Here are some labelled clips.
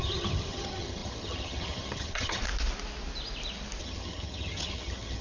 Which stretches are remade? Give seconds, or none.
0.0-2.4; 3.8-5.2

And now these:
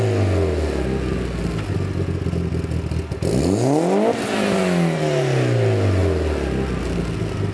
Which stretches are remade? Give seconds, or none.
none